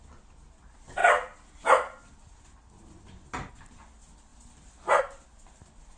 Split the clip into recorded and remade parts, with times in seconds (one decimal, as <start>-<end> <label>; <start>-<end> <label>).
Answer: 0.0-6.0 recorded